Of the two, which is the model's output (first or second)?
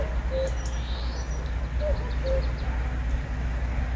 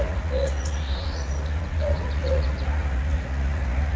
second